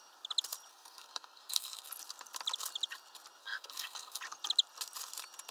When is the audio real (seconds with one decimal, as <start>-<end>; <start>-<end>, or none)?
0.0-0.7; 1.9-3.4; 4.2-5.5